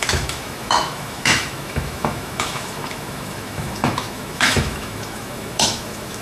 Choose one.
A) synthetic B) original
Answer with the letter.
A